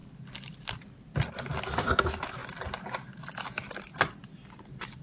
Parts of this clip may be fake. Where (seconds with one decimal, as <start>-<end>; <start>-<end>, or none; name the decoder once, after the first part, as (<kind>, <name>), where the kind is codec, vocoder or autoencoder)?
none